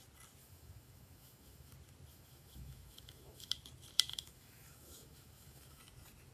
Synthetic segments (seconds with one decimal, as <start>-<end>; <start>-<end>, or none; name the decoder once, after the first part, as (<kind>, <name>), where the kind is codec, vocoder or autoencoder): 0.4-1.7 (autoencoder, DAC-VAE); 2.1-3.5; 4.1-5.8